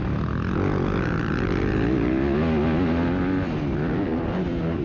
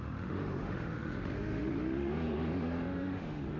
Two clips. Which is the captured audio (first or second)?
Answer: first